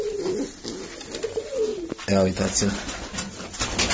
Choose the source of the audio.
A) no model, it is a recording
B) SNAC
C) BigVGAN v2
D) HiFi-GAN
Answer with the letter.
A